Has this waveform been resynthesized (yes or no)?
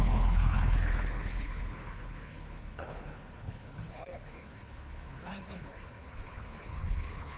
yes